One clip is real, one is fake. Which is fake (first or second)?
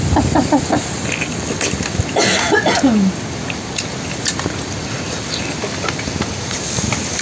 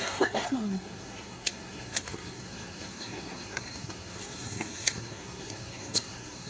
second